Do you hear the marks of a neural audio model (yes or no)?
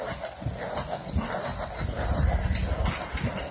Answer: no